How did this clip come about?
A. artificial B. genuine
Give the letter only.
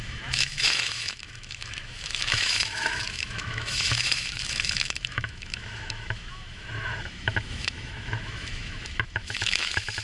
A